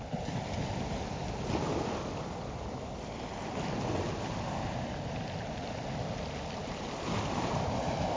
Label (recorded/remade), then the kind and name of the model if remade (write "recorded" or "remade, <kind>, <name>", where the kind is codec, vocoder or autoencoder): recorded